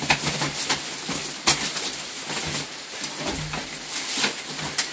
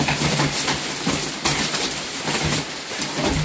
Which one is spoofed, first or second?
second